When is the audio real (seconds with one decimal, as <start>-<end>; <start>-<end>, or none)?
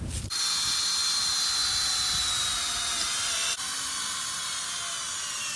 0.0-5.6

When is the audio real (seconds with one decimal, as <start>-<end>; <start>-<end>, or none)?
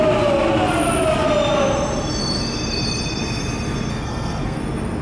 0.0-3.9; 4.6-5.0